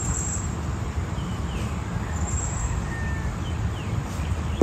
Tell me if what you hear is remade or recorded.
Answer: recorded